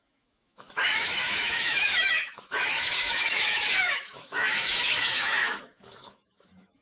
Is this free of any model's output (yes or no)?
no